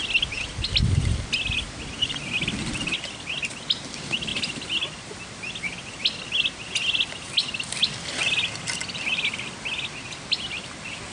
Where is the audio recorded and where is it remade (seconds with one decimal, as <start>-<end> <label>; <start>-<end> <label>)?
0.0-11.1 recorded